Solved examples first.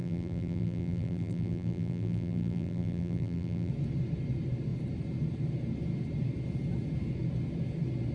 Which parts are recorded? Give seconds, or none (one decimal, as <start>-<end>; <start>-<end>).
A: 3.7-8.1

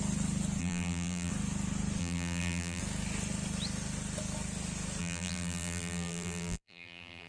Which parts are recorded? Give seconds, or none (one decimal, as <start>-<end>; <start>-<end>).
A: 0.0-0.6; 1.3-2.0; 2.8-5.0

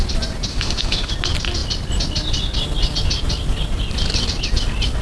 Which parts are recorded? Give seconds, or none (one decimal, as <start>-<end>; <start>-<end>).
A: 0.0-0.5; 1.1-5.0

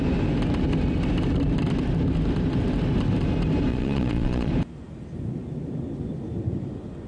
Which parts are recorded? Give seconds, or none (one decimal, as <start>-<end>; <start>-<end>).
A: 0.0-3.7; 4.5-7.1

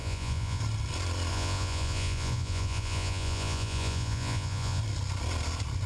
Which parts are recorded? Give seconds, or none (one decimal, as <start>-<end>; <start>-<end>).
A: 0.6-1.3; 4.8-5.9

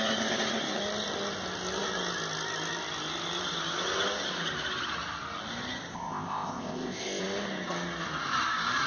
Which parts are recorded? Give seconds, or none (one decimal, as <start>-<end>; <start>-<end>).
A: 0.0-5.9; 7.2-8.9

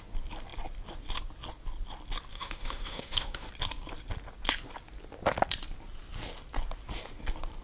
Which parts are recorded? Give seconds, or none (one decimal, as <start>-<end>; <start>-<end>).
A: 0.0-2.3; 3.5-7.6

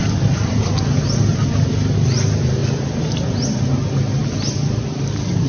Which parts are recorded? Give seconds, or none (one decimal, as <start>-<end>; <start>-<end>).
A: 1.3-2.6; 3.6-4.2; 4.8-5.5